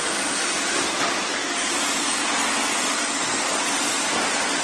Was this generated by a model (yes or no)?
no